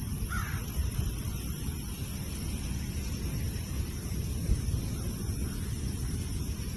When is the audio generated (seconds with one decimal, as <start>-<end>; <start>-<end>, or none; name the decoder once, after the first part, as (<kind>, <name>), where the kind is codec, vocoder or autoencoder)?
none